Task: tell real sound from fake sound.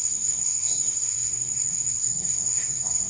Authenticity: fake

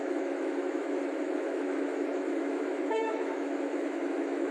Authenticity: fake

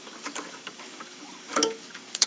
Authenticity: fake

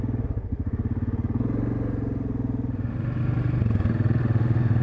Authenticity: real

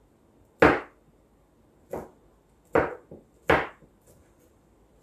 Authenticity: real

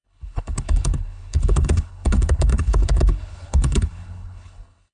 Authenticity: fake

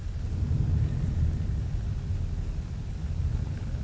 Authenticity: real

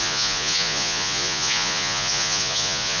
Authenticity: fake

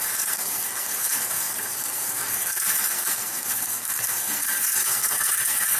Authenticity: fake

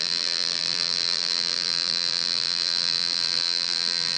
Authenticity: fake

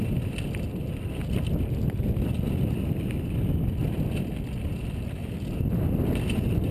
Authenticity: real